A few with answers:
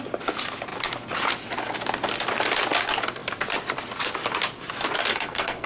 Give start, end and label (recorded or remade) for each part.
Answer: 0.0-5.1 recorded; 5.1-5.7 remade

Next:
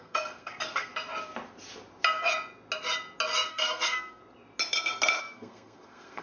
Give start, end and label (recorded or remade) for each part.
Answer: 0.0-0.9 remade; 0.9-3.5 recorded; 3.5-4.2 remade; 4.2-5.2 recorded; 5.2-6.2 remade

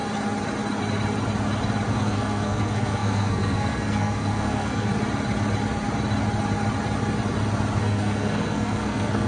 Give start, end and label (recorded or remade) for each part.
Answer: 0.0-1.9 recorded; 1.9-4.9 remade; 4.9-7.8 recorded; 7.8-9.3 remade

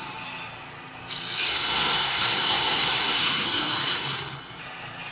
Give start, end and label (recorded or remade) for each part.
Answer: 0.0-1.5 recorded; 1.5-4.6 remade; 4.6-5.1 recorded

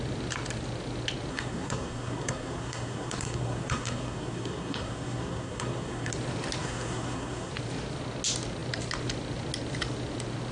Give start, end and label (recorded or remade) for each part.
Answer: 0.0-1.3 recorded; 1.3-6.1 remade; 6.1-6.6 recorded; 6.6-7.5 remade; 7.5-10.5 recorded

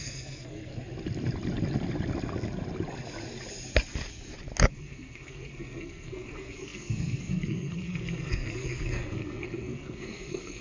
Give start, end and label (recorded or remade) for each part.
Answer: 0.0-0.7 remade; 0.7-4.7 recorded; 4.7-10.6 remade

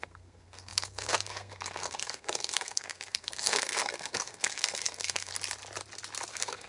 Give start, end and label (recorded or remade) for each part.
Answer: 0.0-5.3 remade; 5.3-6.3 recorded; 6.3-6.7 remade